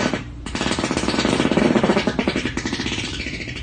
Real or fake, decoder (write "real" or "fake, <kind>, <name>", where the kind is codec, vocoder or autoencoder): fake, vocoder, BigVGAN v2